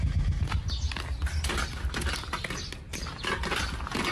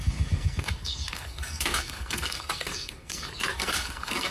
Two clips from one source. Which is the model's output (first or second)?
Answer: second